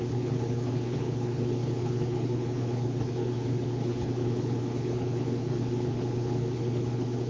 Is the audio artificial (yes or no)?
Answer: yes